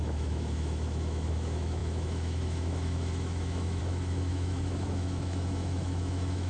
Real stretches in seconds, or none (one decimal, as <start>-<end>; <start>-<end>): none